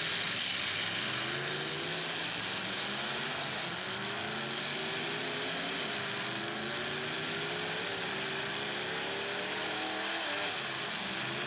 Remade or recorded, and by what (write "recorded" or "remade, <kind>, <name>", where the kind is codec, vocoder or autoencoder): recorded